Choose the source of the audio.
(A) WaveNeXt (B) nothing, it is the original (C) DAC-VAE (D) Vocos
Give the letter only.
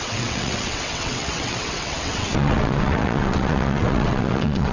A